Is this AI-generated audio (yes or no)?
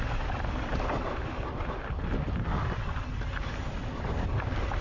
no